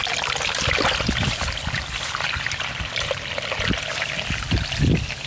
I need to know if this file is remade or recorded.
recorded